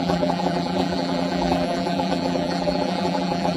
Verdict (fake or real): fake